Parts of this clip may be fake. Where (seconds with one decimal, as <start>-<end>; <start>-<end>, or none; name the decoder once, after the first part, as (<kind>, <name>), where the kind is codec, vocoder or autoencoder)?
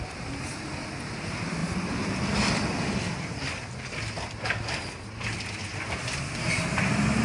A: none